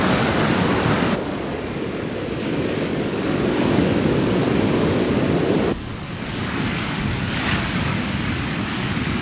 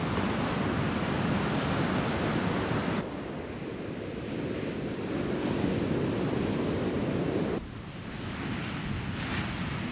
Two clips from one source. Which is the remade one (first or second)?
first